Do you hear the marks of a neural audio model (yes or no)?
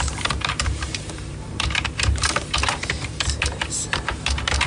yes